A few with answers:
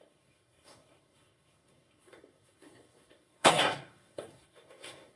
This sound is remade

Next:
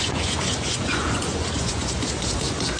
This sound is remade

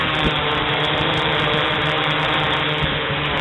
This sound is remade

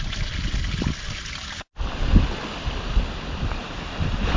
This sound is recorded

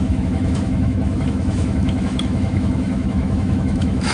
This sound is remade